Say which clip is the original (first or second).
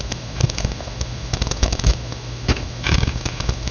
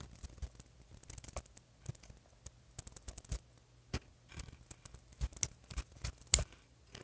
second